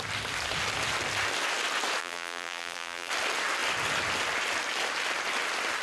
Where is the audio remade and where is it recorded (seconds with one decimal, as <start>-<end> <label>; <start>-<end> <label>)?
0.0-2.0 recorded; 2.0-3.1 remade; 3.1-5.8 recorded